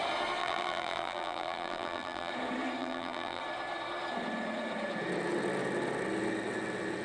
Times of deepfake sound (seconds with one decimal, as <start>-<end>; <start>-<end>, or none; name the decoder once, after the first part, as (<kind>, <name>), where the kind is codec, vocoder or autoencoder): 0.4-2.3 (vocoder, BigVGAN v2); 2.8-3.4